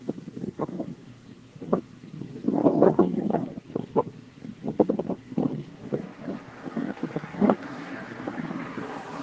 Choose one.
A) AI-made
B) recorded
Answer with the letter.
A